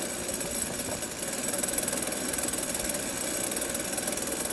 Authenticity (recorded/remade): recorded